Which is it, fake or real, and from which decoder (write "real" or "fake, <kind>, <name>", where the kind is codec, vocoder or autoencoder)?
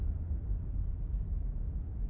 real